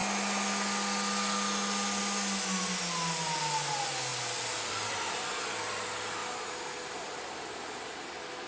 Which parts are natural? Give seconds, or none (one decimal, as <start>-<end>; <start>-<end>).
0.0-8.5